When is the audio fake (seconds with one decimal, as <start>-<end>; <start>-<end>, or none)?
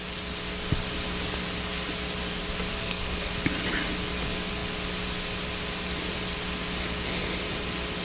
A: 2.7-3.3